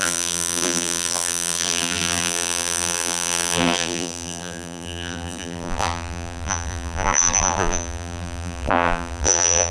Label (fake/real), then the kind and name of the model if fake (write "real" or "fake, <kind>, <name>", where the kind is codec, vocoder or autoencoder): fake, vocoder, BigVGAN v2